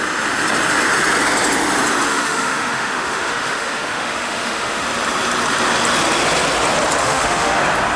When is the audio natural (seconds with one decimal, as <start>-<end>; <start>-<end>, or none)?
0.0-2.1; 4.8-7.0; 7.6-8.0